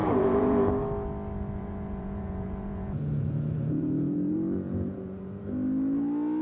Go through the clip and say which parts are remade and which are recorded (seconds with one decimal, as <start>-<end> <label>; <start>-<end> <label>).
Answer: 0.0-0.7 remade; 0.7-1.6 recorded; 1.6-5.4 remade; 5.4-6.4 recorded